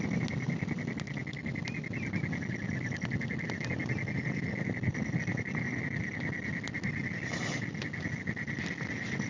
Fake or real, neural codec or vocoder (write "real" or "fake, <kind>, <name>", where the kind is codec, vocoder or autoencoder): real